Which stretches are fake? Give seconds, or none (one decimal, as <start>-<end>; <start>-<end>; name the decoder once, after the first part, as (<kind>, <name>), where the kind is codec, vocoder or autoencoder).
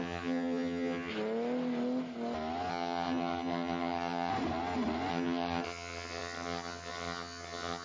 0.0-1.1 (vocoder, HiFi-GAN); 2.7-4.3; 5.1-7.8